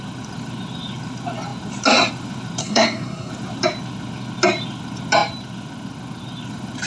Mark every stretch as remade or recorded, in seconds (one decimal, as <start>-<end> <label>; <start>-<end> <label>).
0.0-2.6 recorded; 2.6-3.3 remade; 3.3-6.9 recorded